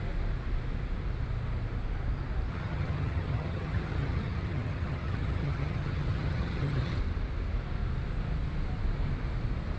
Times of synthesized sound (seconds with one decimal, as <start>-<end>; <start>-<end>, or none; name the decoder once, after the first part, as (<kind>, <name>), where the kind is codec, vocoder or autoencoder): 2.5-7.0 (vocoder, HiFi-GAN)